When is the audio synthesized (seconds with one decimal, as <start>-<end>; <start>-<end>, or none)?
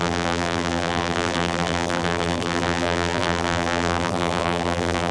0.0-5.1